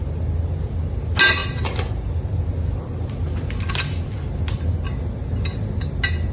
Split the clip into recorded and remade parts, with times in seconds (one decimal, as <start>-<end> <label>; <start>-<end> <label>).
0.0-6.3 recorded

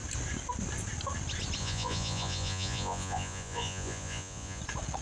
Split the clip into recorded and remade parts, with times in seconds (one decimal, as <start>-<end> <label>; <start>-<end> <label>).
0.0-1.6 recorded; 1.6-4.6 remade; 4.6-5.0 recorded

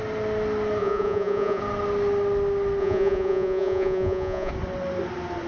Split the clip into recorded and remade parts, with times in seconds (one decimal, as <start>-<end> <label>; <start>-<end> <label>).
0.0-0.8 recorded; 0.8-1.6 remade; 1.6-2.8 recorded; 2.8-4.5 remade; 4.5-5.5 recorded